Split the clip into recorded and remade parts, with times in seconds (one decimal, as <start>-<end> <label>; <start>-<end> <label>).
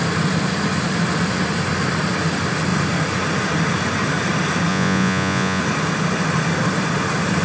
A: 0.0-4.7 recorded; 4.7-5.6 remade; 5.6-7.4 recorded